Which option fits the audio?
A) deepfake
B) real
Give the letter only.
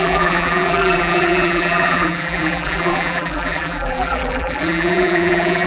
A